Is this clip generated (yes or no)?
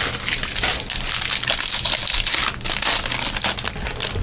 no